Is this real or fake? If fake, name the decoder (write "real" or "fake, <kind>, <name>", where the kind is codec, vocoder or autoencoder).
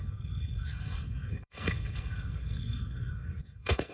fake, codec, SNAC